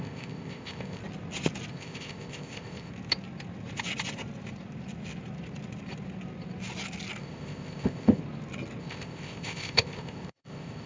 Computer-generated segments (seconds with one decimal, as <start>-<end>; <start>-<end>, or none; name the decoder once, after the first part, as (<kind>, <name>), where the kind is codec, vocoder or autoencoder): 0.0-1.0 (codec, ZipCodec); 1.7-2.9; 7.2-8.2; 8.8-10.9